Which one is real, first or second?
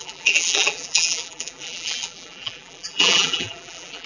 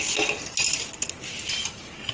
second